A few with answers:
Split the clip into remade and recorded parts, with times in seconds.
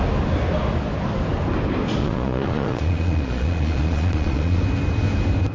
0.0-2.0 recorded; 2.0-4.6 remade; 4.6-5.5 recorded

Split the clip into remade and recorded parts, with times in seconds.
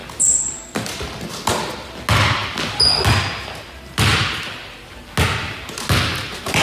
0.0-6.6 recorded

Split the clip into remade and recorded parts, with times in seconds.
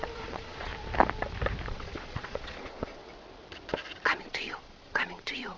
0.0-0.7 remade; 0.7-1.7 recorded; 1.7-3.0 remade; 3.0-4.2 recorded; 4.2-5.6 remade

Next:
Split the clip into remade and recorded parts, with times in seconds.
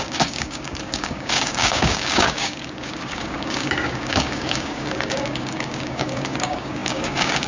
0.0-7.5 remade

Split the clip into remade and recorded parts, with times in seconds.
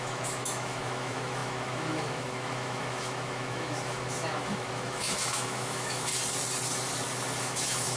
0.0-6.1 remade; 6.1-7.4 recorded; 7.4-8.0 remade